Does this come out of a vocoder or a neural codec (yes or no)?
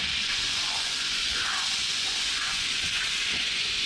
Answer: yes